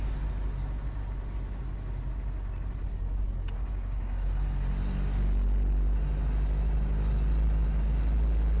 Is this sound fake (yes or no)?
no